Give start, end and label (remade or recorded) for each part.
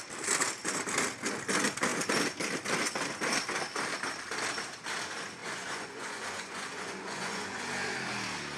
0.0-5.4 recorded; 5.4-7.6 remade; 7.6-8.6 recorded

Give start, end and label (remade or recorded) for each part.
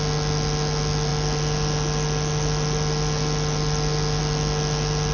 0.0-5.1 recorded